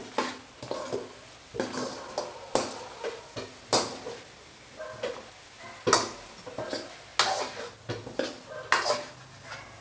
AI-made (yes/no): no